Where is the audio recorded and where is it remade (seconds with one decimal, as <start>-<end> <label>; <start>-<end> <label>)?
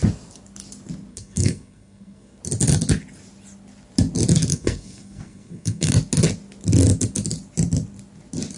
0.0-1.1 recorded; 1.1-2.4 remade; 2.4-4.5 recorded; 4.5-5.9 remade; 5.9-8.6 recorded